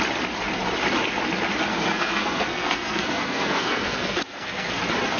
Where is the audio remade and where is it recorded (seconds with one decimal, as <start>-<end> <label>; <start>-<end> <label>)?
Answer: 0.0-1.7 recorded; 1.7-4.8 remade; 4.8-5.2 recorded